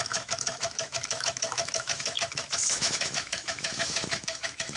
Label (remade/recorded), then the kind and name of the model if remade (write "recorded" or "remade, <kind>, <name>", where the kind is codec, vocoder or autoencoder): remade, autoencoder, DAC-VAE